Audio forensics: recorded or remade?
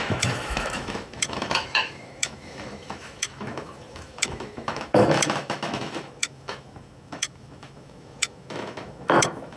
remade